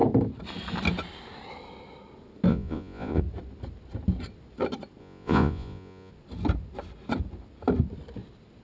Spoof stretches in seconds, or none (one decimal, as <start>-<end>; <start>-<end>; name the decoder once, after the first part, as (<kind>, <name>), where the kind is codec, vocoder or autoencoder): 2.5-3.2 (vocoder, Vocos); 5.0-6.1